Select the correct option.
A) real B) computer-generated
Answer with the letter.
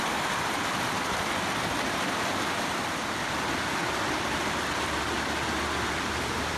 A